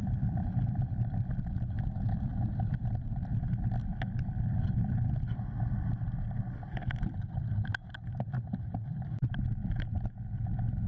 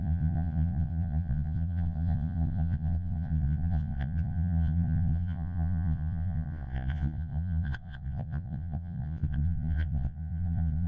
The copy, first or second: second